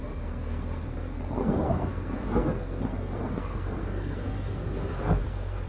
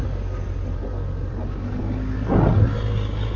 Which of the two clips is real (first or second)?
second